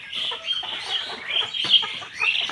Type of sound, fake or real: real